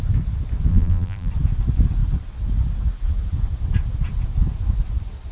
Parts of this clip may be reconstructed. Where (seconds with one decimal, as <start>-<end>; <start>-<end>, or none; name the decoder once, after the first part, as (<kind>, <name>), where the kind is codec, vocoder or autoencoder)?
0.7-1.3 (vocoder, BigVGAN v2)